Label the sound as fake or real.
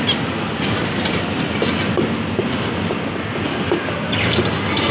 real